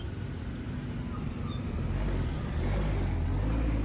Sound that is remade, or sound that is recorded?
recorded